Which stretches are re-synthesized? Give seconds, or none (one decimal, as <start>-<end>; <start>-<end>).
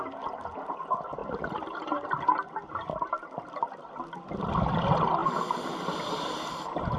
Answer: none